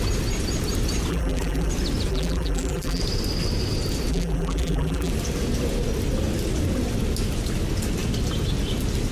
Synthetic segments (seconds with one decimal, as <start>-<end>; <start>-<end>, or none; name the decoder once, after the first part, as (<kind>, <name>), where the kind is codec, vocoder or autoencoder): 1.1-1.7 (vocoder, BigVGAN v2); 2.1-3.0; 4.1-5.1